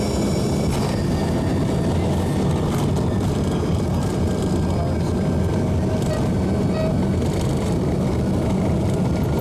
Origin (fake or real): real